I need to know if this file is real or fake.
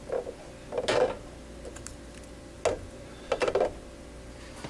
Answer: real